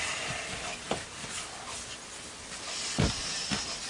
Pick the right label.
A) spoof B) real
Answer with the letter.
B